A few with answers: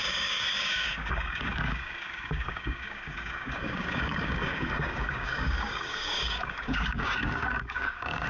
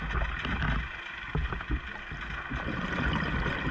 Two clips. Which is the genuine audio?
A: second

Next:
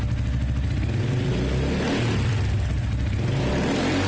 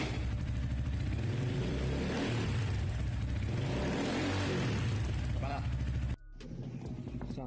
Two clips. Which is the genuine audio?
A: first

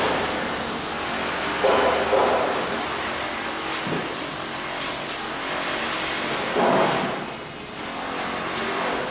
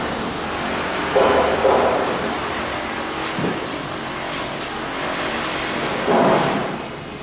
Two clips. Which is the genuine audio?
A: first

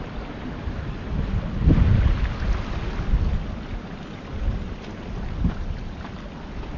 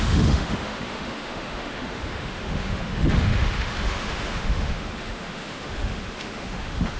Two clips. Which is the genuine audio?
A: first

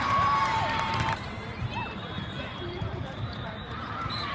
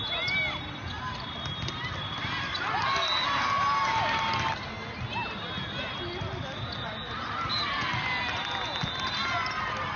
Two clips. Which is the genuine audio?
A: second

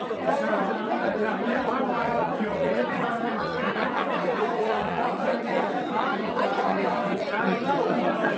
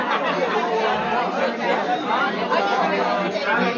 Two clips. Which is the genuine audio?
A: second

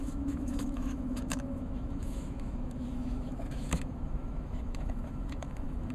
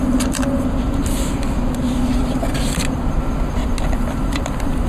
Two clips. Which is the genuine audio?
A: second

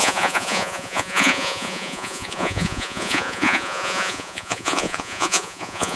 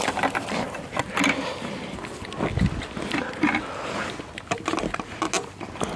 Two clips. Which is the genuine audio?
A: second